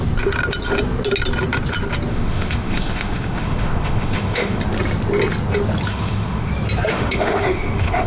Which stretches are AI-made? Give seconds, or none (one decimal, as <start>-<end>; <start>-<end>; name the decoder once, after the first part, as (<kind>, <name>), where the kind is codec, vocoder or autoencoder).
2.1-4.6 (autoencoder, DAC-VAE); 5.9-6.5; 6.9-8.1